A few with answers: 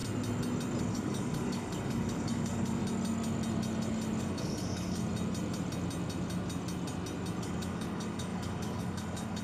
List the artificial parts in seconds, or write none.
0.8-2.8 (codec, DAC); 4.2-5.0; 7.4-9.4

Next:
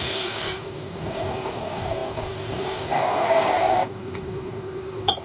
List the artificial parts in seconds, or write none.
0.0-5.2 (codec, DAC)

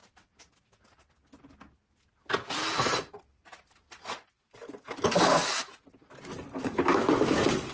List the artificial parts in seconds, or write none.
4.5-5.6 (codec, DAC); 6.6-7.7

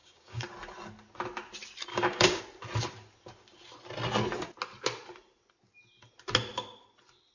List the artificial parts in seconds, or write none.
0.0-0.5 (codec, DAC); 1.9-2.4

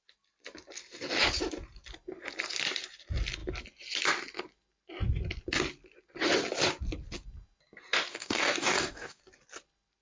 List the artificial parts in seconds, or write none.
8.1-9.2 (codec, DAC)